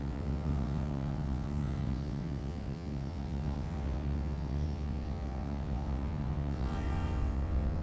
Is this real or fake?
fake